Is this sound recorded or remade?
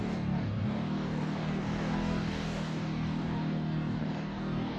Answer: remade